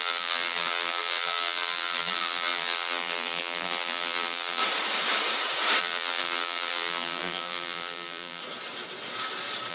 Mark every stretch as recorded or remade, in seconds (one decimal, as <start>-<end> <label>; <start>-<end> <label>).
0.0-4.6 remade; 4.6-5.8 recorded; 5.8-8.4 remade; 8.4-9.7 recorded